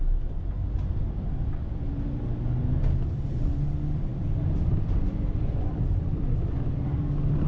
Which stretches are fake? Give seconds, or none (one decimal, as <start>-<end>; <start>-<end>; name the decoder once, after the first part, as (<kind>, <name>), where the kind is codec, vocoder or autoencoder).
0.6-1.8 (vocoder, BigVGAN v2); 4.1-6.5